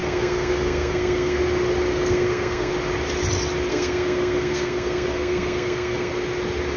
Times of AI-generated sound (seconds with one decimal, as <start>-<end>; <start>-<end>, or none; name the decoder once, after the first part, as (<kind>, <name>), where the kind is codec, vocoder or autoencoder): 0.0-1.4 (codec, SNAC); 1.9-2.7; 3.7-6.1

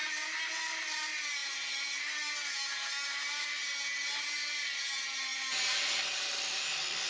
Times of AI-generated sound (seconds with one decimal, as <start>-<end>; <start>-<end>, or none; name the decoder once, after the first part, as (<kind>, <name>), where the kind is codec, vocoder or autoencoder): none